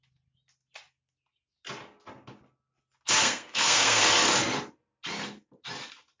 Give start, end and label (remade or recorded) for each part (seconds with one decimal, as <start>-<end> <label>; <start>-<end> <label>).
0.0-3.2 recorded; 3.2-4.0 remade; 4.0-6.2 recorded